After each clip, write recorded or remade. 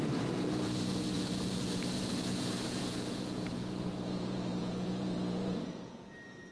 remade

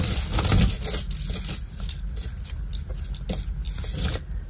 recorded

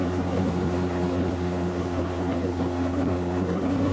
remade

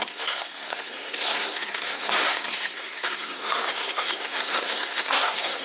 remade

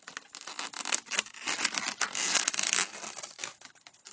recorded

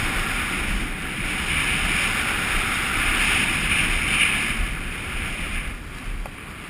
recorded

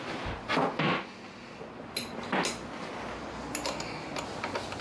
recorded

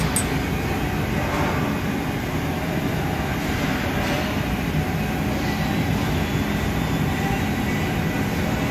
recorded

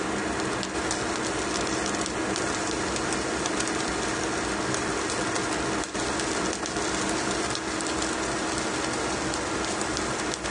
recorded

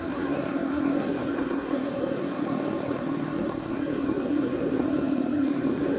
remade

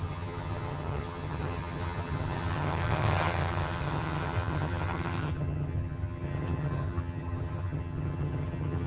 remade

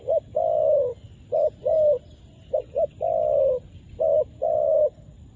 recorded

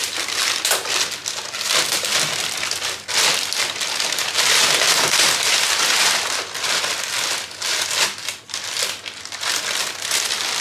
recorded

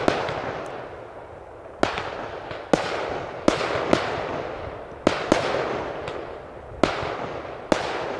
recorded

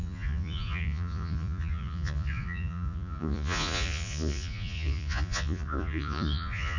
remade